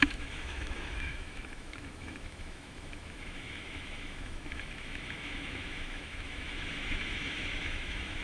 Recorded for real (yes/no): no